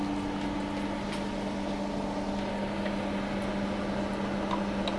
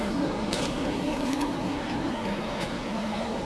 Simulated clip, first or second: second